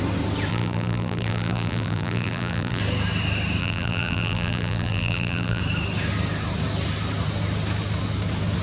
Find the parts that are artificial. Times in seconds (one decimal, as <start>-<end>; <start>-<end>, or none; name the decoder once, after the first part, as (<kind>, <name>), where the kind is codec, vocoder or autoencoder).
0.5-2.8 (vocoder, BigVGAN v2); 3.6-5.6